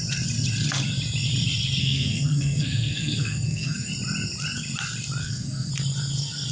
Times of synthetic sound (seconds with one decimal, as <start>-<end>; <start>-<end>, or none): 1.8-3.9; 5.2-5.7